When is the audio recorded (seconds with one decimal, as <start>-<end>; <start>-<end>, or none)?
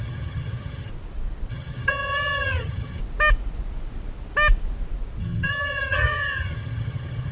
0.9-1.5; 3.0-5.2